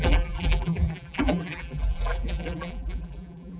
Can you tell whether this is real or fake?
fake